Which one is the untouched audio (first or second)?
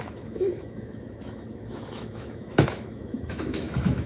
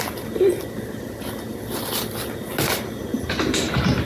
second